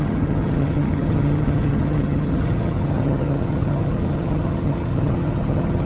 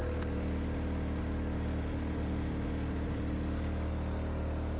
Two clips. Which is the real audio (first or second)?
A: second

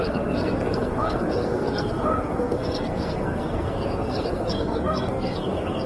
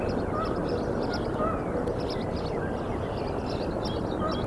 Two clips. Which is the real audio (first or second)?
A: second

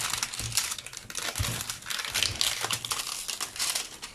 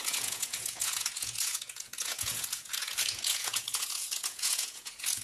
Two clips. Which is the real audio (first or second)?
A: first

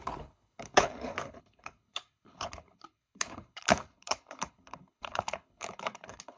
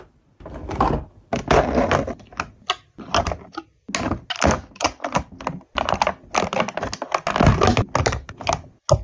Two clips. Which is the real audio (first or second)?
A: second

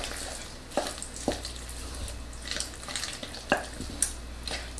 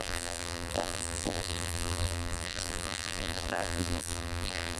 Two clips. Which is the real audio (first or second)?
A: first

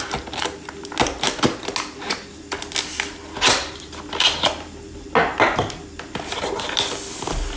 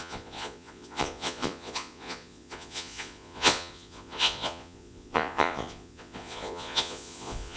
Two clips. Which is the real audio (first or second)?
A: first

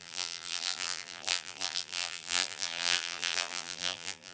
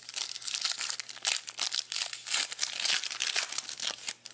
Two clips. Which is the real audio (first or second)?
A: second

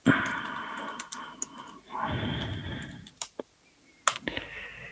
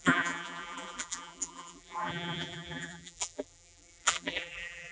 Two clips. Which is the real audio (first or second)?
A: first